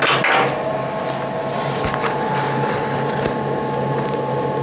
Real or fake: real